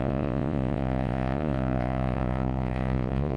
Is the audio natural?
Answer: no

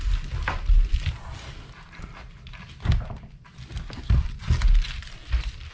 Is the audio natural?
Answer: yes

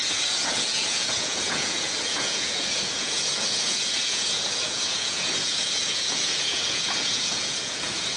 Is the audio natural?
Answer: no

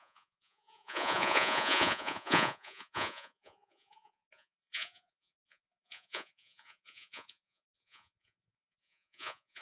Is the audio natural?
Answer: no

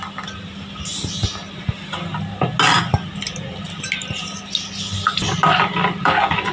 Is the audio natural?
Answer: yes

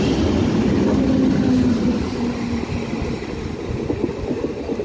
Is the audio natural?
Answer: yes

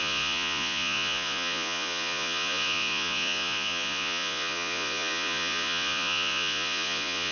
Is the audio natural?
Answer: no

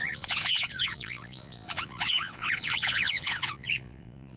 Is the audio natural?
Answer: no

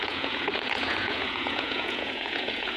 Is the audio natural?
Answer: no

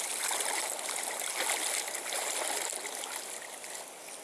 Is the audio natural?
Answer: yes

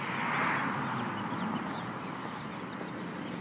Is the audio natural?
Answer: yes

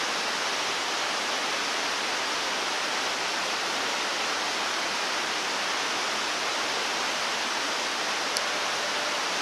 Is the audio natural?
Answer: yes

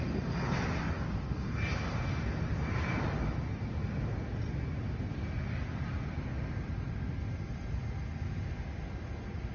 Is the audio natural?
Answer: yes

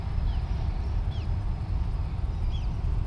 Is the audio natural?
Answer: yes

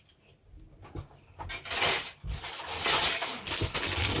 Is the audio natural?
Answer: yes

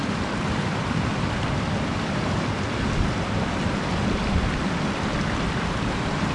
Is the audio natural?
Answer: yes